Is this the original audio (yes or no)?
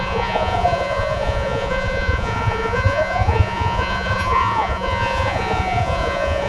no